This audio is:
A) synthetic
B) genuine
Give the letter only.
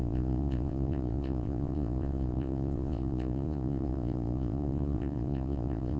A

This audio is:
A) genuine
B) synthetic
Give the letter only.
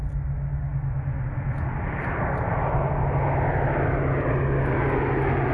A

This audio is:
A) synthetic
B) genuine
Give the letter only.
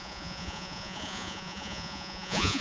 A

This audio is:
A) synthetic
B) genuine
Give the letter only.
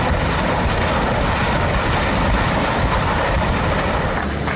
B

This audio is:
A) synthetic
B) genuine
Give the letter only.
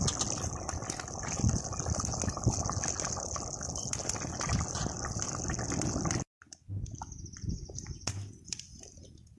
B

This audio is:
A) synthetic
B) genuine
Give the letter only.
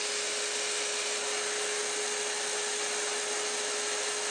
B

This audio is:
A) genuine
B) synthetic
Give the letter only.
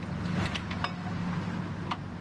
A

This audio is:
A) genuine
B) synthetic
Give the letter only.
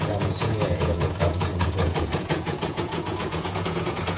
B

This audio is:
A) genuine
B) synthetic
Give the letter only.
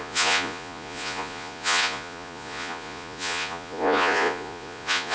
B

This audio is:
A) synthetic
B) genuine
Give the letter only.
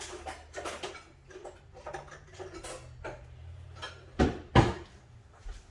B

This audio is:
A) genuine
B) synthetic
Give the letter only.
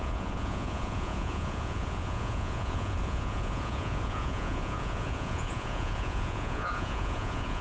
B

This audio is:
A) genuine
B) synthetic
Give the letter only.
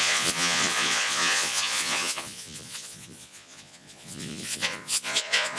B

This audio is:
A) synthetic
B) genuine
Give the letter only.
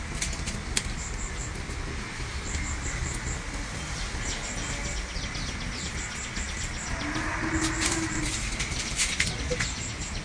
B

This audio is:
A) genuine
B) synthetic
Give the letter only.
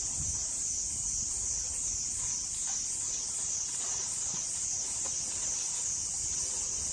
A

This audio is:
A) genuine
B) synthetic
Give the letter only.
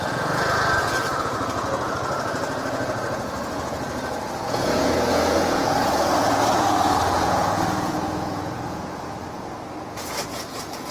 B